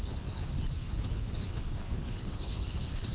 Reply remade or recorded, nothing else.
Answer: remade